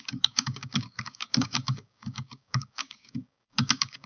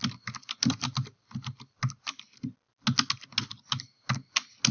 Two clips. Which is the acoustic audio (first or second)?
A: second